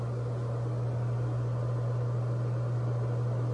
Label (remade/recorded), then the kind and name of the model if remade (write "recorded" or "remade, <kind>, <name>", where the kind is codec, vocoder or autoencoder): recorded